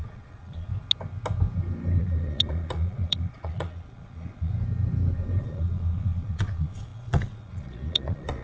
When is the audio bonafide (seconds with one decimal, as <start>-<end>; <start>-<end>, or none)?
0.7-2.0; 4.5-5.4